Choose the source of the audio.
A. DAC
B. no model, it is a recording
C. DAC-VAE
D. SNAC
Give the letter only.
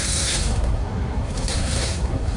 D